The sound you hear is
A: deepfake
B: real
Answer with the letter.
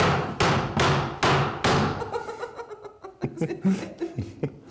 B